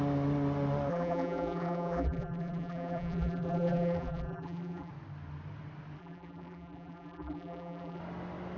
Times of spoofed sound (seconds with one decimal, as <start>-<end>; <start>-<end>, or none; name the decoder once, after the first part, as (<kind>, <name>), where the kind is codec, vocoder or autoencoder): 0.9-4.9 (vocoder, BigVGAN v2); 6.0-8.0